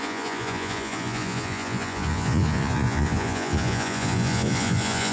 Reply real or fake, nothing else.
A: fake